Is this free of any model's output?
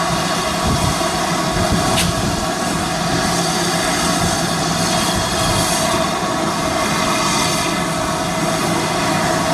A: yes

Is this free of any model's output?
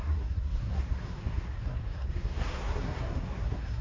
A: no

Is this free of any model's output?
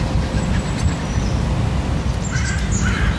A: yes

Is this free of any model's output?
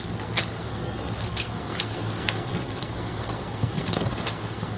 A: no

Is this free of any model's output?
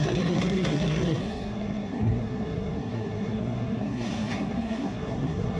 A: no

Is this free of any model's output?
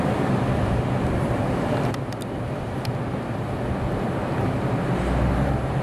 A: yes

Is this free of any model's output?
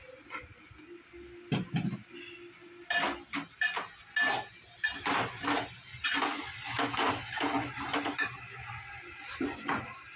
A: yes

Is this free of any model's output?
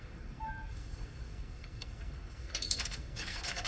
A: no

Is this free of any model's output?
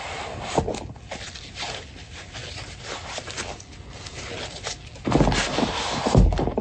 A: yes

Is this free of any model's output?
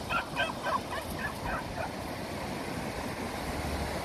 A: yes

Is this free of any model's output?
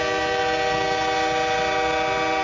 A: yes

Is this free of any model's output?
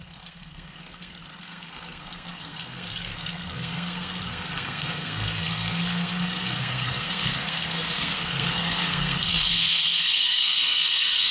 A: no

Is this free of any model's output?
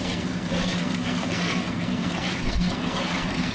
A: no